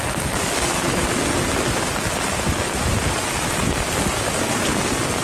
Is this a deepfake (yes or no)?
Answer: no